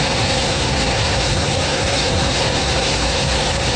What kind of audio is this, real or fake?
fake